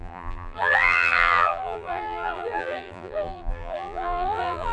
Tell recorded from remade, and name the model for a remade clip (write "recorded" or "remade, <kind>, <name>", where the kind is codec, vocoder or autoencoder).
remade, vocoder, BigVGAN v2